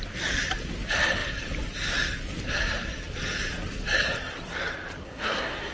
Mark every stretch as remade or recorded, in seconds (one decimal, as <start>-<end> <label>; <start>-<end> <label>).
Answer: 0.0-5.0 recorded; 5.0-5.7 remade